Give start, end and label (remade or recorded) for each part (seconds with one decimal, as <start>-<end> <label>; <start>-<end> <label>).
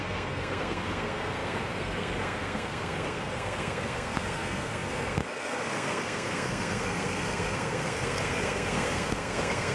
0.0-9.7 remade